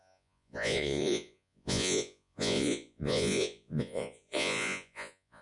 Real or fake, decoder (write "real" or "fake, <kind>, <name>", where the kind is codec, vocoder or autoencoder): fake, vocoder, Vocos